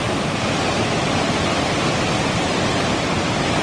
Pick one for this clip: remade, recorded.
recorded